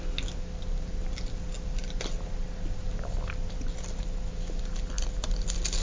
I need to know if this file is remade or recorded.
recorded